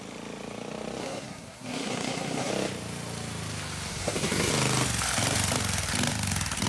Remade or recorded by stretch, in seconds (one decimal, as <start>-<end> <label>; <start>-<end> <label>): 0.0-1.0 recorded; 1.0-2.5 remade; 2.5-3.9 recorded; 3.9-4.5 remade; 4.5-6.7 recorded